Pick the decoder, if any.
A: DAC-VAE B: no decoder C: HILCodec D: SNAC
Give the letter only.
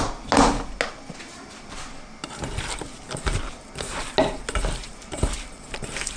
B